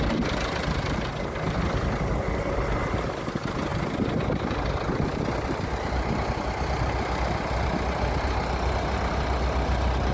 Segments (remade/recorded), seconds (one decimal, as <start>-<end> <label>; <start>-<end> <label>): 0.0-10.1 recorded